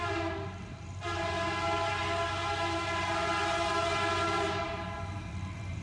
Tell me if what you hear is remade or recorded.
remade